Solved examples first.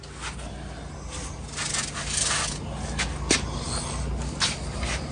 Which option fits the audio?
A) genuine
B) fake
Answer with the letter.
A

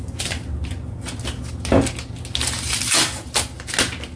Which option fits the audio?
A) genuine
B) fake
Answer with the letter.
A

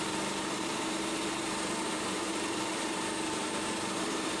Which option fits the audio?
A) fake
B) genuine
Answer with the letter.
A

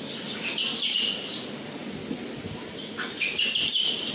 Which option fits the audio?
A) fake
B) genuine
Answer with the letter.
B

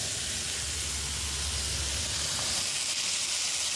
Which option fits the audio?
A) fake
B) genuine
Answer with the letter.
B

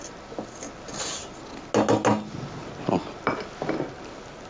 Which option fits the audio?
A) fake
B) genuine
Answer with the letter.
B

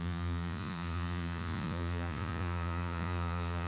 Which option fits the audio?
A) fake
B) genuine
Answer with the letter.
A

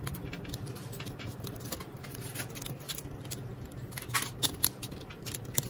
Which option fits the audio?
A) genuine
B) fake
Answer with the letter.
A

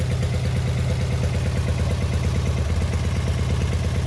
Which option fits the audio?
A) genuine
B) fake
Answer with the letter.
A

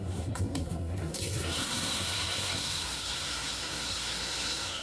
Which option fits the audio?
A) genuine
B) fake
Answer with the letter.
B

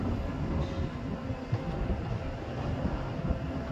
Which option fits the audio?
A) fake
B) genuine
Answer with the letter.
B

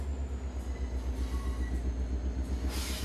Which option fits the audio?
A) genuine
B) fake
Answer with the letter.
A